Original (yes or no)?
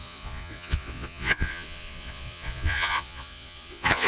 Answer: no